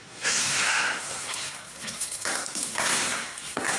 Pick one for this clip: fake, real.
fake